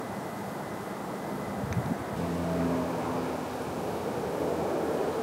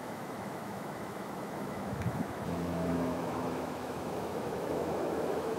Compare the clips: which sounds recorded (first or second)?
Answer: first